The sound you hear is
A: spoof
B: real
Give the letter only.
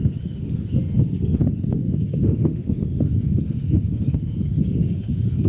A